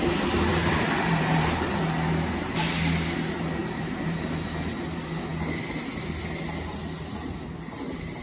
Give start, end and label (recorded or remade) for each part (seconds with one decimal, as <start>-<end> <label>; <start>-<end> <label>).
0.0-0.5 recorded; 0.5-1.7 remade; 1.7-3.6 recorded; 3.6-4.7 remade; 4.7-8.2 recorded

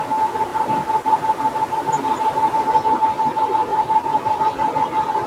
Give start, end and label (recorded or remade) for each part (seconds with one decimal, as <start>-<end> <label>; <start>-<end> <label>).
0.0-3.7 recorded; 3.7-4.4 remade; 4.4-5.3 recorded

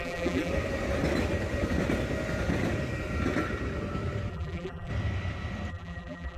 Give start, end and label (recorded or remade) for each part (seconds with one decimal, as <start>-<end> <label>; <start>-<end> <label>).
0.0-0.5 remade; 0.5-4.3 recorded; 4.3-4.9 remade; 4.9-5.7 recorded; 5.7-6.4 remade

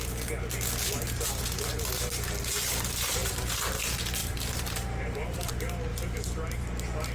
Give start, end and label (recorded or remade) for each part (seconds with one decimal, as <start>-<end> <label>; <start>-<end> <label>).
0.0-3.2 recorded; 3.2-3.8 remade; 3.8-4.2 recorded; 4.2-5.5 remade; 5.5-5.9 recorded; 5.9-6.6 remade; 6.6-7.1 recorded